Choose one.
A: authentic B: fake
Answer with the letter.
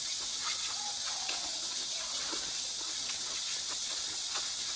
B